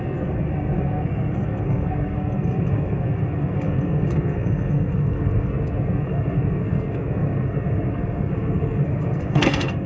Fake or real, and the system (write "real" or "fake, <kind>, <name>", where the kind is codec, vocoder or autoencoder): fake, codec, SNAC